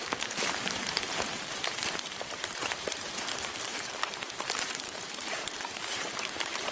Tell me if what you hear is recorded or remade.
remade